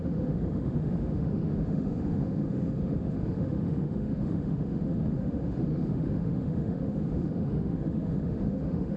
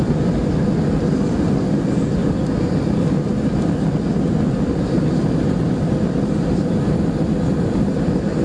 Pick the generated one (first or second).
first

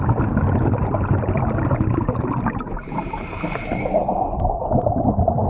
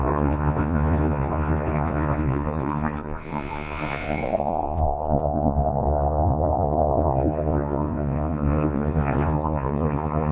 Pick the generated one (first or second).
second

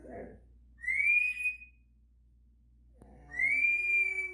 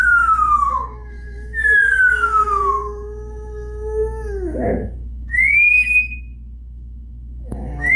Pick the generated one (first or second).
second